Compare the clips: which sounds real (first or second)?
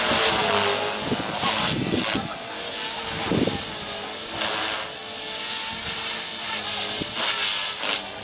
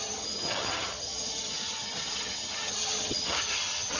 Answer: first